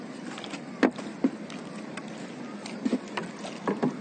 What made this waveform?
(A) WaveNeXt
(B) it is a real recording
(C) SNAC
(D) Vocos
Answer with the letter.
B